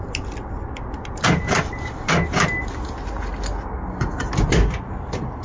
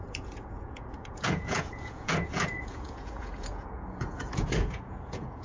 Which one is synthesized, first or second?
second